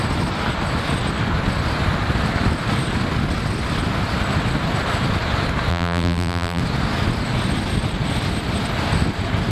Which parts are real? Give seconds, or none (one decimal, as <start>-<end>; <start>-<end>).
0.0-5.7; 6.6-9.5